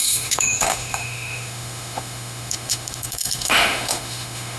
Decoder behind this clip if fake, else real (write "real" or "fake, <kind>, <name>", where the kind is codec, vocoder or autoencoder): fake, autoencoder, DAC-VAE